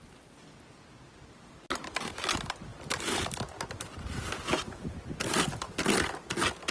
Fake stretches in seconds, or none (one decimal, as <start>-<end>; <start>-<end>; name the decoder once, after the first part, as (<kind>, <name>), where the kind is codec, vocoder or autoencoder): none